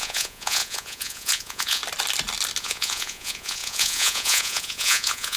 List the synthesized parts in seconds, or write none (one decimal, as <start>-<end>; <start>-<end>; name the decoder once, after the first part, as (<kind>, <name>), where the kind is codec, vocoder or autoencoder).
0.0-1.8 (vocoder, Vocos); 2.6-5.4